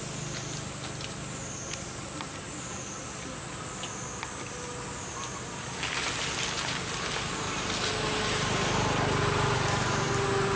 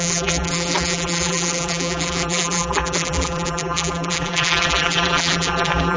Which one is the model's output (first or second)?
second